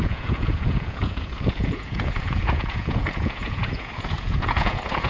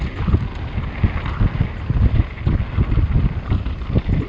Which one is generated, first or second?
first